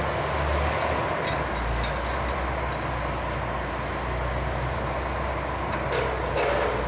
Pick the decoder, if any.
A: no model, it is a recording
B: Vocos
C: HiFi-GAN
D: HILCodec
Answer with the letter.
A